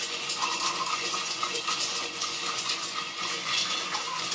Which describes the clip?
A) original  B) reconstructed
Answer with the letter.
B